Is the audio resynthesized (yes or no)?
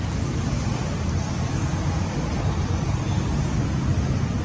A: no